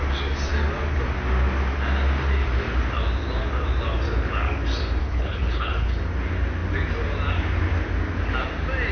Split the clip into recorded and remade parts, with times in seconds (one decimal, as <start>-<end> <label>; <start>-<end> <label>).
0.0-5.0 recorded; 5.0-6.0 remade; 6.0-8.9 recorded